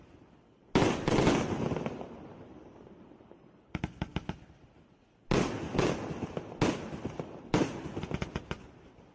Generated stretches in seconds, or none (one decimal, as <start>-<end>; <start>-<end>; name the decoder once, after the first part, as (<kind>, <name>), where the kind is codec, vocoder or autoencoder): none